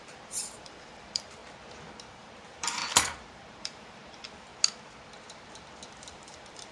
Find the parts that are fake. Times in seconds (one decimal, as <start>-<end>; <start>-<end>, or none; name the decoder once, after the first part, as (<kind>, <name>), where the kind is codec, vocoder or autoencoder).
0.0-1.4 (vocoder, BigVGAN v2); 2.1-2.8; 3.3-4.5; 5.9-6.7